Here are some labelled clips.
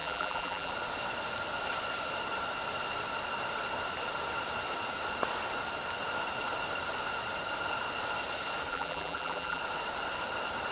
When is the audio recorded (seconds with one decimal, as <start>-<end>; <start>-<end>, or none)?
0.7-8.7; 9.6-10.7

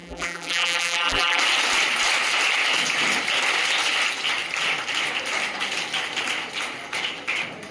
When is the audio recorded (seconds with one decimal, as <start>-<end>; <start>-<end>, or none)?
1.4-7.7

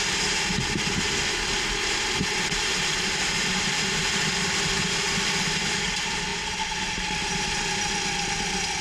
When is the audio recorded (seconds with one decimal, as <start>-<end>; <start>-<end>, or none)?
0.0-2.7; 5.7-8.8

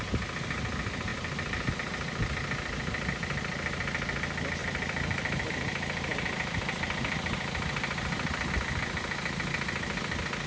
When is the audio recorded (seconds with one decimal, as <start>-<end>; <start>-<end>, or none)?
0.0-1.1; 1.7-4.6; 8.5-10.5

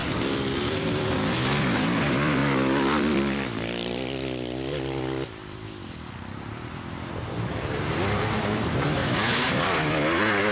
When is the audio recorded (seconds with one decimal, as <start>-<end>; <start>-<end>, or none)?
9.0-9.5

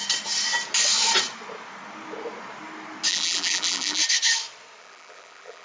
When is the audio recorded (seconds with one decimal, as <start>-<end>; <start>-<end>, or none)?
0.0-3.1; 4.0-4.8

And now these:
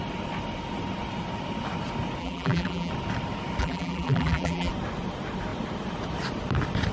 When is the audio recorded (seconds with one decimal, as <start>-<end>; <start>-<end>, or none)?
0.0-2.2; 2.9-3.6; 4.7-6.9

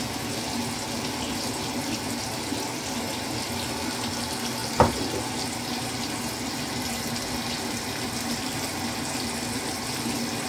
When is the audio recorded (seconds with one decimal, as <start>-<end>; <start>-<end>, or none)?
0.0-10.5